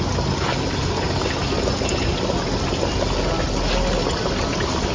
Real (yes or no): yes